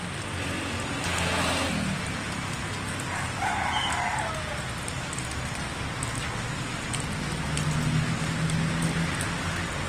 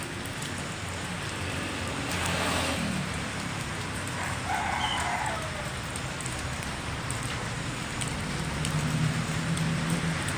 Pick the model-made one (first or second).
second